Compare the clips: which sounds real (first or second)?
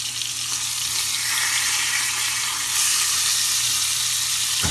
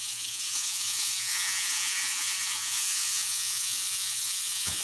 first